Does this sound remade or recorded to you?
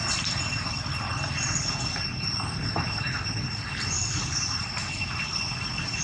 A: recorded